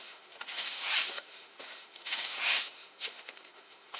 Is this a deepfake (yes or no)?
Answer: yes